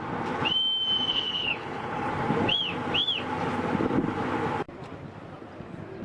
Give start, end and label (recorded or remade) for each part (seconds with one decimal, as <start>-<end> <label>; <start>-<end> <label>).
0.0-1.1 recorded; 1.1-2.1 remade; 2.1-6.0 recorded